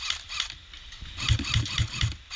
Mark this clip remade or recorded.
recorded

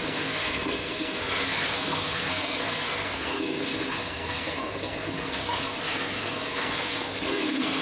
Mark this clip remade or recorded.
remade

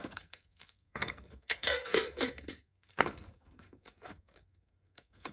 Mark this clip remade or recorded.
remade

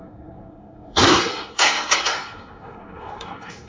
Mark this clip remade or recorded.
remade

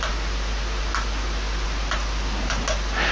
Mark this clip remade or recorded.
recorded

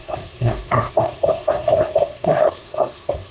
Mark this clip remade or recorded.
remade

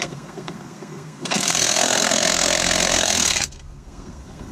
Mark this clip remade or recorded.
remade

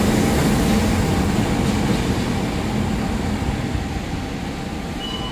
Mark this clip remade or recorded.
recorded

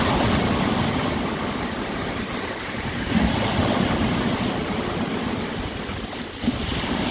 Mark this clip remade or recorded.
recorded